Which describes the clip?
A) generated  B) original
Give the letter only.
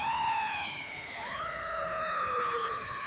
A